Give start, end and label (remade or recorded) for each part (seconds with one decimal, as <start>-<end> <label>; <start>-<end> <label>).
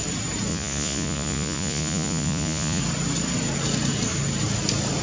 0.0-0.5 recorded; 0.5-2.8 remade; 2.8-5.0 recorded